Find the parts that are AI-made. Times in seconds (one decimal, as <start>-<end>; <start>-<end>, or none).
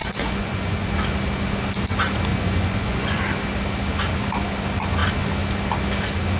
0.0-0.9; 2.3-3.2